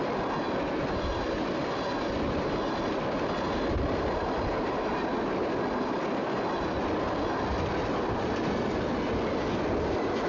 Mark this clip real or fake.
real